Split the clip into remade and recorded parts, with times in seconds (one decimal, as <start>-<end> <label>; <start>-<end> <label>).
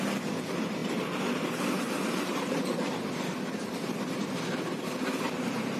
0.0-5.8 remade